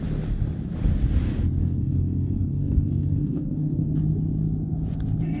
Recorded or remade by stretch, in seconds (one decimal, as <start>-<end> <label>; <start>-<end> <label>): 0.0-1.6 recorded; 1.6-3.9 remade; 3.9-5.4 recorded